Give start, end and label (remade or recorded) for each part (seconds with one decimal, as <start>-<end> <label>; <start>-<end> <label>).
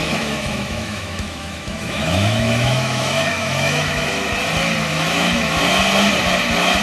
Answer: 0.0-4.1 remade; 4.1-4.9 recorded; 4.9-5.6 remade; 5.6-6.8 recorded